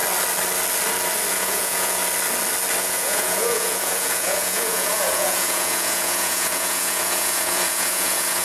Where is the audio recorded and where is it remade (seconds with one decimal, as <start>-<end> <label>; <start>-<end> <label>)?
0.0-1.3 recorded; 1.3-2.0 remade; 2.0-2.8 recorded; 2.8-8.4 remade